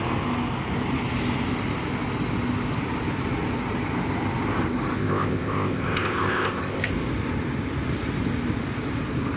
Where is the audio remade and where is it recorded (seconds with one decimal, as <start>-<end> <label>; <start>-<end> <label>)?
0.0-5.0 recorded; 5.0-6.9 remade; 6.9-9.4 recorded